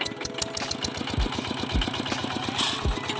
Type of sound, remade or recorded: recorded